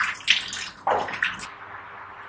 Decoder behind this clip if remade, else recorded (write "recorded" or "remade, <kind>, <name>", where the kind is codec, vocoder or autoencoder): recorded